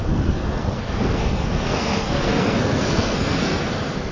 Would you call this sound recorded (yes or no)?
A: no